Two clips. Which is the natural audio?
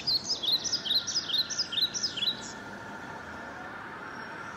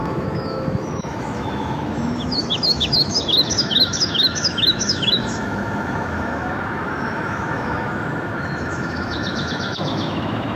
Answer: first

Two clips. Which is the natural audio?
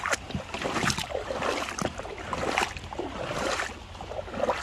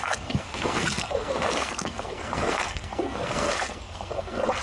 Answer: first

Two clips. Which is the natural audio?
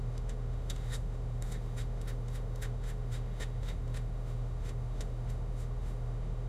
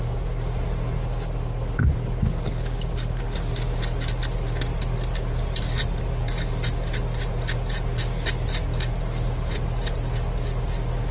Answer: second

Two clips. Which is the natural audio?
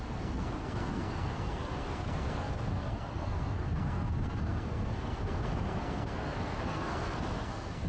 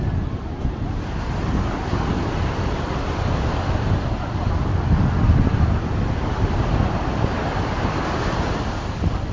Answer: second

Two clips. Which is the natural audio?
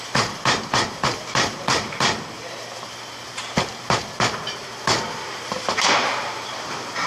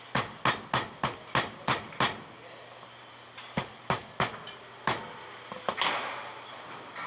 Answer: second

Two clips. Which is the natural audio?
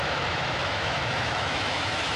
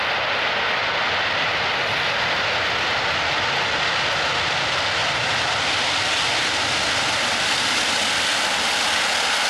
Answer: second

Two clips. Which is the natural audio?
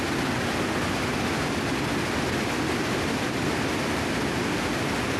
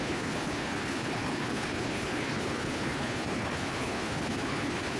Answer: first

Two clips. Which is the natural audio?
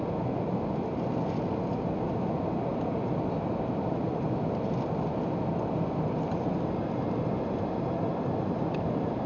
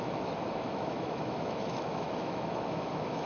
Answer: first